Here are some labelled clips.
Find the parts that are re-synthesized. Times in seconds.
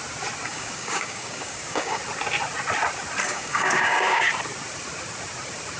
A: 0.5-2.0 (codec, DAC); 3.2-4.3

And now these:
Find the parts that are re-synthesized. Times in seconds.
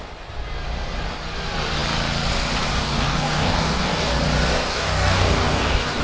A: 2.8-4.2 (codec, DAC); 4.7-6.0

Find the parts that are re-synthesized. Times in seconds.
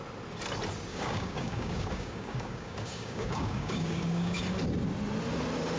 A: 0.9-4.4 (codec, DAC)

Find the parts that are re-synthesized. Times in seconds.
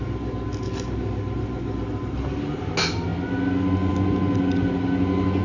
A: none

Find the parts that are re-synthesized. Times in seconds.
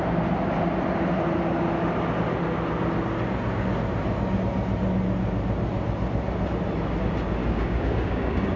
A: 7.4-8.6 (codec, DAC)